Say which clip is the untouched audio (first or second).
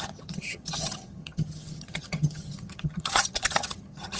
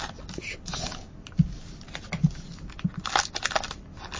second